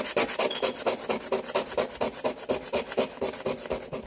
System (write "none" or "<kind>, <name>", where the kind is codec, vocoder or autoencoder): none